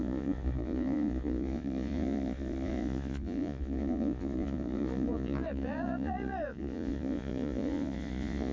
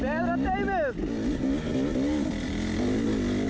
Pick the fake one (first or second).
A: first